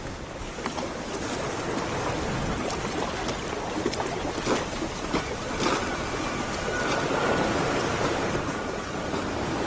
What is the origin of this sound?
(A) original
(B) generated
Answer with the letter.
A